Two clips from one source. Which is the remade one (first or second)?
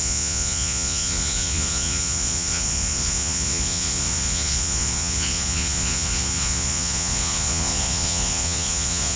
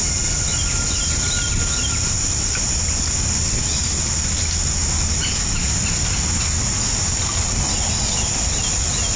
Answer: first